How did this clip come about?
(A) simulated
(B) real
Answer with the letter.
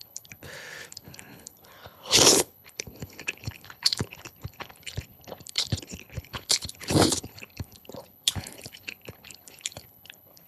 A